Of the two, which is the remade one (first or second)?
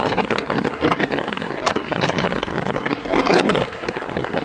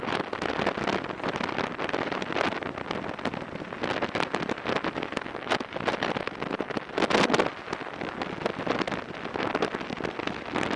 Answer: first